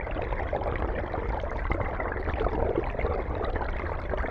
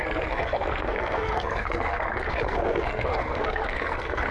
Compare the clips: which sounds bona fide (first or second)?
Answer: first